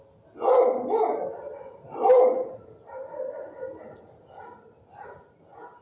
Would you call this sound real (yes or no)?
yes